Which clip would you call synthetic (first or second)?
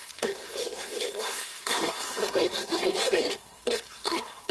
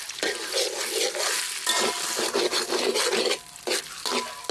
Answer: first